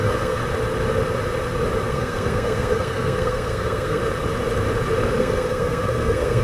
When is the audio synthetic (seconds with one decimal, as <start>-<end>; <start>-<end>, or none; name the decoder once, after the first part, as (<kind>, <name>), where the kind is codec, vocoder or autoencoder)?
0.0-0.4 (codec, SNAC); 1.9-4.0; 5.2-6.4